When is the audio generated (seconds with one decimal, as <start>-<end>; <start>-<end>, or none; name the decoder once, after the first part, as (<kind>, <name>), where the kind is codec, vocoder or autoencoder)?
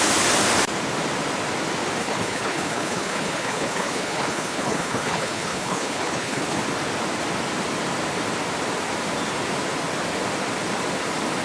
2.0-6.6 (codec, HILCodec)